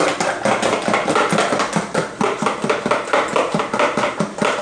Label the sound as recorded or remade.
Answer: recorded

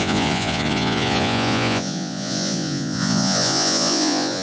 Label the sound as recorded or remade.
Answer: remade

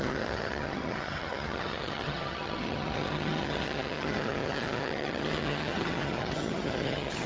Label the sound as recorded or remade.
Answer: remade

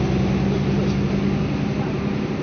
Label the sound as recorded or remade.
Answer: recorded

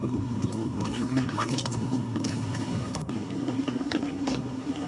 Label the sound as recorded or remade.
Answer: remade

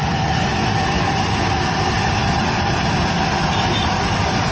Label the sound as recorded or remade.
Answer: remade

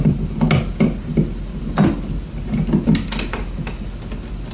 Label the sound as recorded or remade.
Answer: recorded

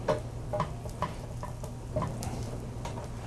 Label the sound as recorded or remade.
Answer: remade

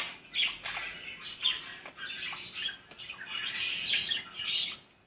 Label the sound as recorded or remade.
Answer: recorded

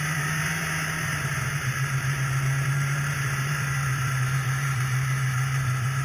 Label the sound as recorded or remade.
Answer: remade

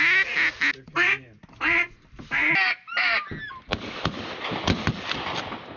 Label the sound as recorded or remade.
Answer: recorded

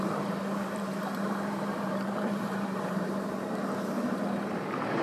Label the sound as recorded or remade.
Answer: remade